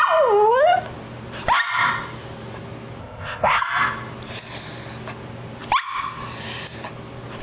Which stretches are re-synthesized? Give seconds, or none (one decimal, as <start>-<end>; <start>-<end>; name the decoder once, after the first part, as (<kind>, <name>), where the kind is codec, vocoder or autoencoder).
3.0-3.6 (codec, ZipCodec)